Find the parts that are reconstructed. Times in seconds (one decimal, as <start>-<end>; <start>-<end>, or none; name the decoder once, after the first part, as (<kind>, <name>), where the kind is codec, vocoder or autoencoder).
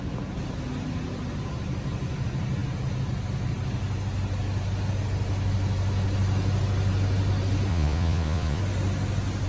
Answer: 7.7-8.6 (vocoder, Vocos)